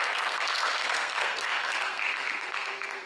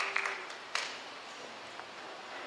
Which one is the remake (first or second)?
first